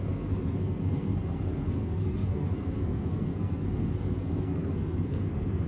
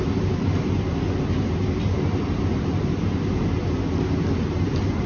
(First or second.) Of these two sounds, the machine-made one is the first